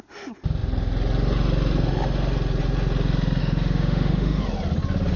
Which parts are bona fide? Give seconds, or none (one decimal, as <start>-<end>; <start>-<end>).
0.0-3.4; 4.4-5.2

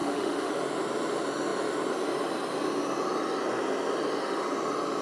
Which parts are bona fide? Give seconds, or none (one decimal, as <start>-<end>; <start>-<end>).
0.5-5.0

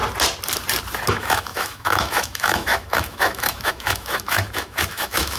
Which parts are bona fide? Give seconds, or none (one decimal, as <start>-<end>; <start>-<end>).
0.0-1.1

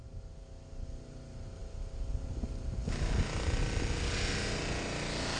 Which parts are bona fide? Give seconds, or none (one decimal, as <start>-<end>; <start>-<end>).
0.0-5.4

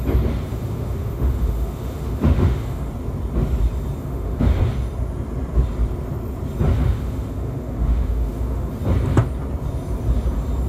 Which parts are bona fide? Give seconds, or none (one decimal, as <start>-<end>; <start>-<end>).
0.0-0.5; 2.9-4.0; 4.6-6.7; 8.7-10.7

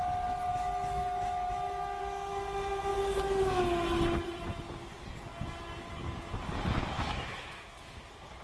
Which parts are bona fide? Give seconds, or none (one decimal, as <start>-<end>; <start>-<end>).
0.0-0.5; 2.0-6.8; 8.0-8.4

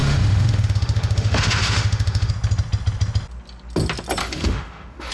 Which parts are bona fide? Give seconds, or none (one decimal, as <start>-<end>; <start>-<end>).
2.3-4.2

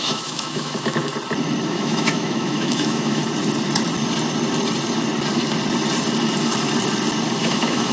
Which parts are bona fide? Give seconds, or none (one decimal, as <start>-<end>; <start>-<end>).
1.1-1.7; 3.2-7.4